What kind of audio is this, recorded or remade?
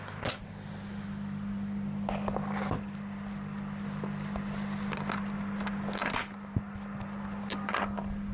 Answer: recorded